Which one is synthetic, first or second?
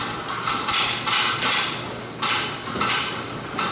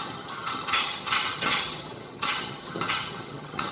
second